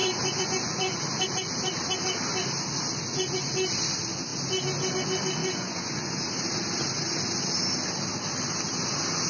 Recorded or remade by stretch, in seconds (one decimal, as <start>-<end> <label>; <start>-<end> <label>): 0.0-1.0 remade; 1.0-5.4 recorded; 5.4-6.3 remade; 6.3-9.3 recorded